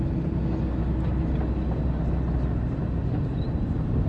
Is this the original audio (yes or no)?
yes